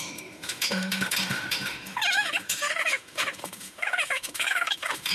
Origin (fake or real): fake